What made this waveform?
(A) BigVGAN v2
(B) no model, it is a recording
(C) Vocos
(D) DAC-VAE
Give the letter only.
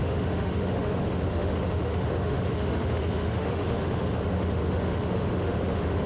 D